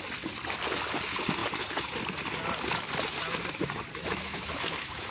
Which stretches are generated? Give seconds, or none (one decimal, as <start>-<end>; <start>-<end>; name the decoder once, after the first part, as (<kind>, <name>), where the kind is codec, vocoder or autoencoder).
4.0-5.1 (autoencoder, DAC-VAE)